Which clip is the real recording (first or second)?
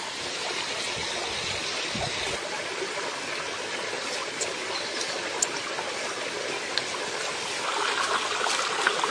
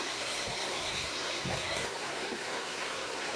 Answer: first